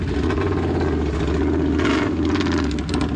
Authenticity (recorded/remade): recorded